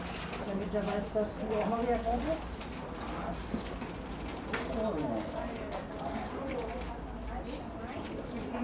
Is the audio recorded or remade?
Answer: recorded